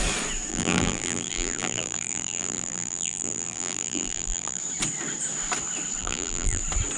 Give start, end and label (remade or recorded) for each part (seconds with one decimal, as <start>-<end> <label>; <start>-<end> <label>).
0.0-0.5 recorded; 0.5-4.6 remade; 4.6-6.0 recorded; 6.0-6.6 remade; 6.6-7.0 recorded